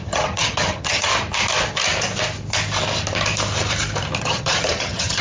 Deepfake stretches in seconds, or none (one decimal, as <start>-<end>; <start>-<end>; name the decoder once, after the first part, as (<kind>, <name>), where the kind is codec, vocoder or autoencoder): 0.0-1.1 (vocoder, HiFi-GAN); 4.2-5.2